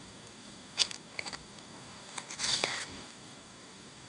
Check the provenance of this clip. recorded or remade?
remade